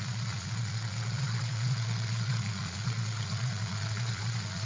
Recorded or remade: remade